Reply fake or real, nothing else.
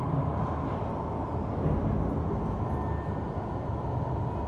real